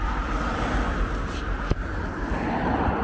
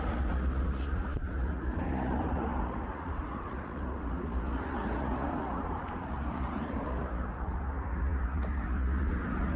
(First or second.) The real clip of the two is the first